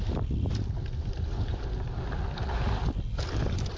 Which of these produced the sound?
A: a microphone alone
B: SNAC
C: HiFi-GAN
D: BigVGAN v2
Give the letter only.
D